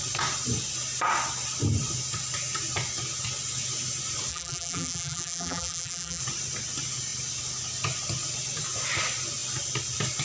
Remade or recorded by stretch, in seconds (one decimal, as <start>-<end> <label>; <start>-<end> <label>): 0.0-4.3 recorded; 4.3-6.2 remade; 6.2-10.2 recorded